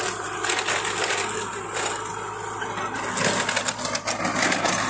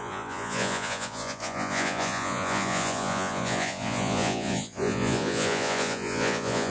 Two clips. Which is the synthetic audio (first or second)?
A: second